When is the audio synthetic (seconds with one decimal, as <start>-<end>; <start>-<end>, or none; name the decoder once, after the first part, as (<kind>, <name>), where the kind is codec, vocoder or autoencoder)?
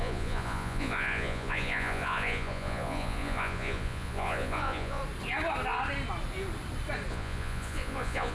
0.0-5.0 (vocoder, Vocos); 7.1-8.3